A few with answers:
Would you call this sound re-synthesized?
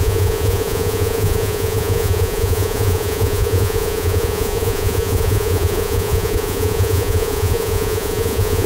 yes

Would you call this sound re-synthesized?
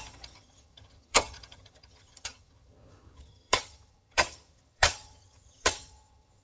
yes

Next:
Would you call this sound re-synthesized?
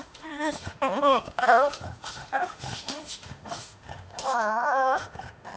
yes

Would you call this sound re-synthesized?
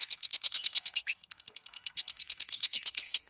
yes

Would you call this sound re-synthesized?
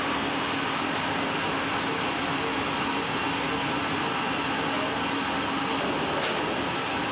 no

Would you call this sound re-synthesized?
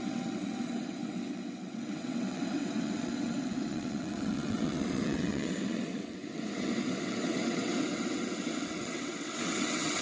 yes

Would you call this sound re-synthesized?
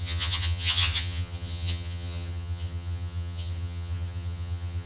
yes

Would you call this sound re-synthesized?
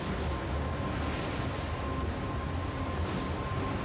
no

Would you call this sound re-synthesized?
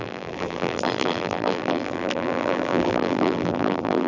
yes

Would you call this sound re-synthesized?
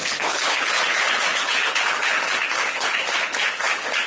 yes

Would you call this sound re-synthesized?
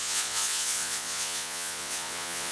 yes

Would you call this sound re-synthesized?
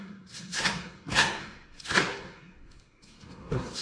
yes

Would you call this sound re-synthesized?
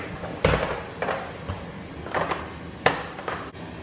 no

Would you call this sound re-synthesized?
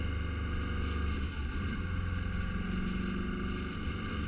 no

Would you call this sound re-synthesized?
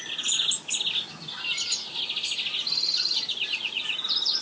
no